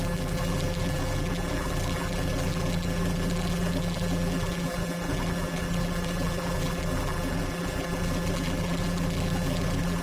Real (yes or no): no